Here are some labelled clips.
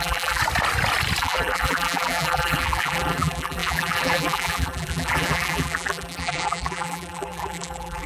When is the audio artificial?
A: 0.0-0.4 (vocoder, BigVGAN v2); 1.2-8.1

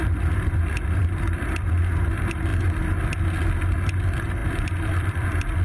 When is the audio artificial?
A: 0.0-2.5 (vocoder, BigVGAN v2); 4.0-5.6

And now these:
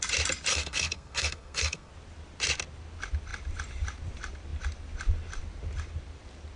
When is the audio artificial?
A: 0.5-1.9 (codec, SNAC)

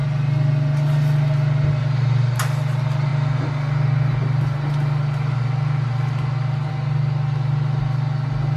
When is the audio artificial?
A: none

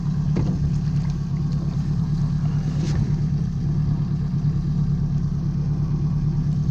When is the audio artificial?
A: 1.3-5.3 (vocoder, BigVGAN v2)

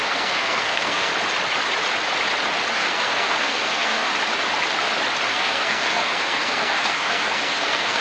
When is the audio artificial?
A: 0.0-1.1 (codec, SNAC); 2.7-4.1; 5.3-8.0